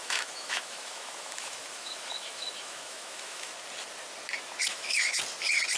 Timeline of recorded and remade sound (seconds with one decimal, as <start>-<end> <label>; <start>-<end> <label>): 0.0-3.5 remade; 3.5-4.7 recorded; 4.7-5.2 remade; 5.2-5.8 recorded